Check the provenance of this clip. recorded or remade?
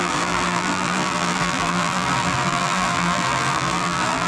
remade